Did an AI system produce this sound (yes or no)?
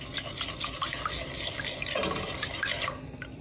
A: no